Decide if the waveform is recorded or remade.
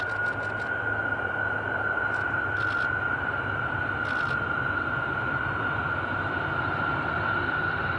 recorded